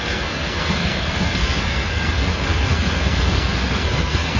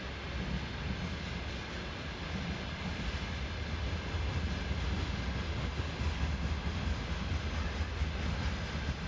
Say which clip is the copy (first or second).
first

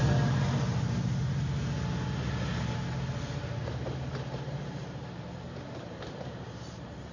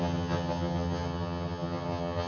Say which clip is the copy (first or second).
second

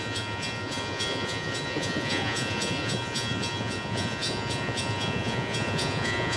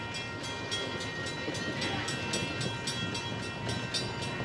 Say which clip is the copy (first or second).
first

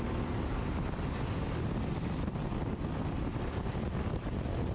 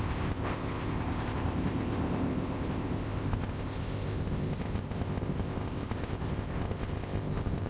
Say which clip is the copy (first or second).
second